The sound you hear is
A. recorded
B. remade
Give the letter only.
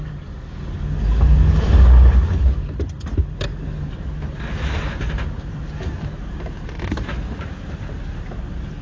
A